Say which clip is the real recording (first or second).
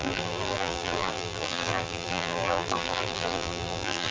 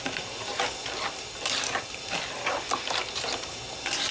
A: second